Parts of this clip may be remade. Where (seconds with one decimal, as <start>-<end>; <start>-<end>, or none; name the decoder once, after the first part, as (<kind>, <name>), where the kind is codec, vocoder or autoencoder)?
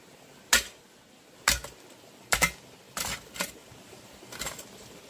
3.6-5.1 (vocoder, BigVGAN v2)